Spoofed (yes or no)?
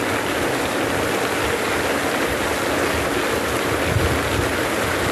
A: no